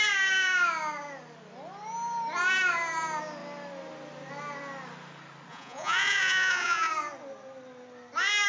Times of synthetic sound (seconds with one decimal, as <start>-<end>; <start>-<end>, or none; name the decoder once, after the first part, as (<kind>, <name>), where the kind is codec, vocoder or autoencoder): 5.5-6.9 (vocoder, Vocos)